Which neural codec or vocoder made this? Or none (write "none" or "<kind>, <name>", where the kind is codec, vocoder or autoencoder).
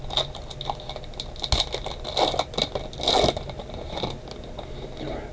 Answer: none